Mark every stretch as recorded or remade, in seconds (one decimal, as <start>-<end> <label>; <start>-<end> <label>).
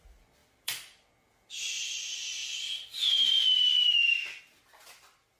0.0-0.4 recorded; 0.4-1.1 remade; 1.1-5.4 recorded